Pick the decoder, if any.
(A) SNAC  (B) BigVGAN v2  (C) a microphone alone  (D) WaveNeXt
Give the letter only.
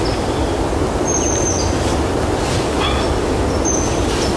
C